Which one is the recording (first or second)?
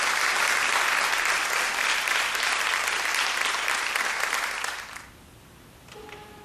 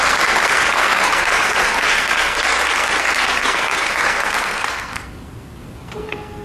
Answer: first